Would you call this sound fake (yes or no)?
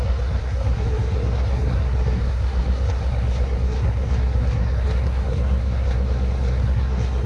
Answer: yes